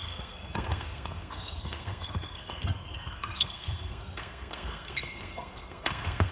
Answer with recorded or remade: remade